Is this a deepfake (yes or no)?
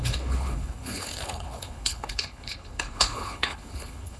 yes